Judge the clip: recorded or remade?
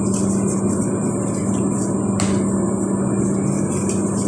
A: recorded